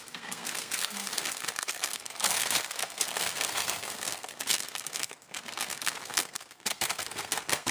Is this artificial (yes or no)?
yes